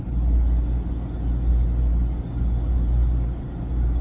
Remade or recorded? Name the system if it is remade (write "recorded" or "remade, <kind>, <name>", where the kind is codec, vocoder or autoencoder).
recorded